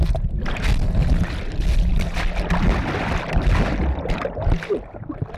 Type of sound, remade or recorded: recorded